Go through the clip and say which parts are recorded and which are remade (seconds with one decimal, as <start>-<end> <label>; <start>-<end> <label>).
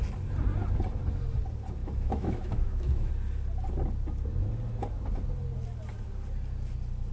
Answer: 0.0-1.8 recorded; 1.8-3.1 remade; 3.1-7.1 recorded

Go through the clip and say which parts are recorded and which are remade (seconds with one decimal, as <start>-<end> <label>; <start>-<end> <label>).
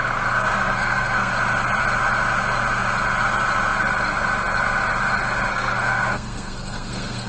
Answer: 0.0-1.3 remade; 1.3-5.5 recorded; 5.5-7.3 remade